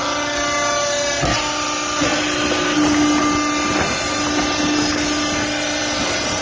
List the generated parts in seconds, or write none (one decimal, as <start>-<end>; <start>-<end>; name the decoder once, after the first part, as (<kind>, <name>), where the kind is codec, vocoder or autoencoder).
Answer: none